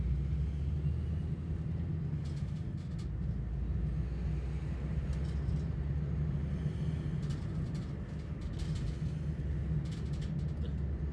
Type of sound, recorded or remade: recorded